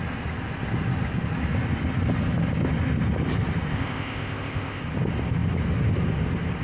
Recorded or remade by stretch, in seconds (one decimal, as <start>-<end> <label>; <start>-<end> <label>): 0.0-3.7 recorded; 3.7-4.8 remade; 4.8-6.6 recorded